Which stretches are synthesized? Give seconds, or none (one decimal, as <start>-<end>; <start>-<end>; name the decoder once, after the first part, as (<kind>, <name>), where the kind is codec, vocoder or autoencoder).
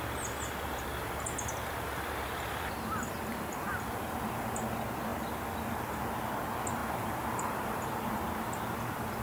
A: 0.9-4.6 (vocoder, BigVGAN v2); 6.8-7.9